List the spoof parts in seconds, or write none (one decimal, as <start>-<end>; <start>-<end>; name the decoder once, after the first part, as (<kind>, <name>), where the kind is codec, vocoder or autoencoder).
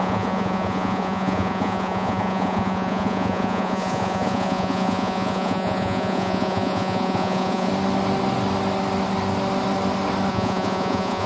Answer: 0.0-7.7 (vocoder, Vocos); 10.3-11.3